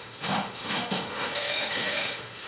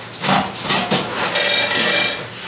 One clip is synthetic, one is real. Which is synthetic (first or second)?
first